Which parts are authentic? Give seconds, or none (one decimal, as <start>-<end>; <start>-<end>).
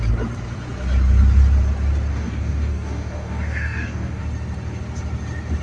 0.0-2.1; 4.2-5.6